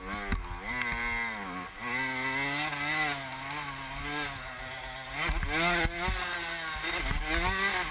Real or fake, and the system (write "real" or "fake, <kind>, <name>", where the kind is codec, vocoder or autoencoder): real